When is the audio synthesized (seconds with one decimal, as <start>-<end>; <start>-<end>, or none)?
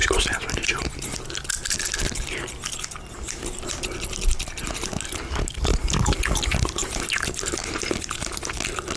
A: none